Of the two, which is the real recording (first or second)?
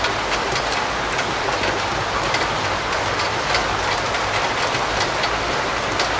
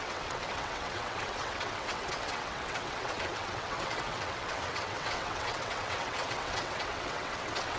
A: first